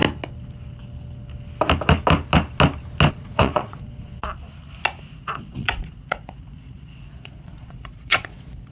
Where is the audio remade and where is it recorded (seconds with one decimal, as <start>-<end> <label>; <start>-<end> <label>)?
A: 0.0-3.1 recorded; 3.1-4.1 remade; 4.1-5.1 recorded; 5.1-8.7 remade